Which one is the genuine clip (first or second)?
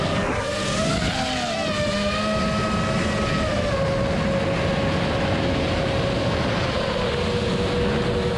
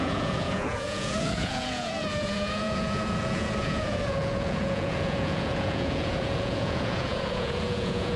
first